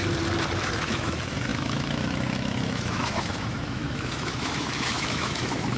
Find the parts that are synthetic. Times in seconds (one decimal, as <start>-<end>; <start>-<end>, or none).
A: 0.6-5.8